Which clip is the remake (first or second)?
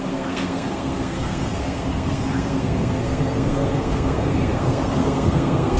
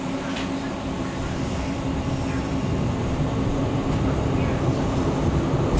first